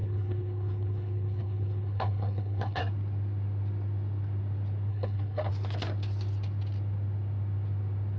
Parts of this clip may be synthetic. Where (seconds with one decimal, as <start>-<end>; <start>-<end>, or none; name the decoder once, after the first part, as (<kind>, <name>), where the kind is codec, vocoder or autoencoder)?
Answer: 0.0-2.8 (codec, HILCodec); 4.9-5.5